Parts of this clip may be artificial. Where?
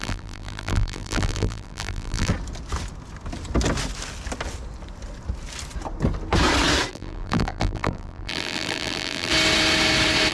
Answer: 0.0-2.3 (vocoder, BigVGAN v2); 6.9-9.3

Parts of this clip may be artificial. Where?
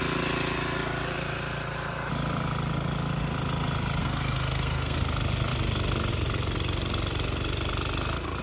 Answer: 4.0-5.0 (codec, SNAC)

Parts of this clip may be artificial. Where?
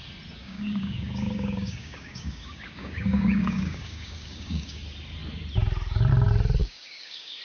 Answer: 0.4-4.8 (codec, DAC); 6.6-7.4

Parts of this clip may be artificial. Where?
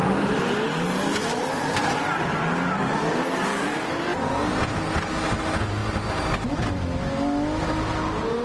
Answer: 4.1-4.8 (vocoder, Vocos)